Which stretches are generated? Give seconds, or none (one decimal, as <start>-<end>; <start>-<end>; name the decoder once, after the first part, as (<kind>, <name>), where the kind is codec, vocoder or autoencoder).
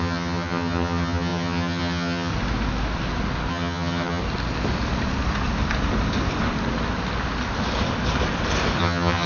0.0-2.3 (vocoder, HiFi-GAN); 3.5-4.2; 8.8-9.3